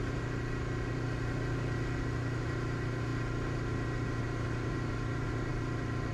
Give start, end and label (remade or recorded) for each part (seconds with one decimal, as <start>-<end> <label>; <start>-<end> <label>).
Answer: 0.0-6.1 recorded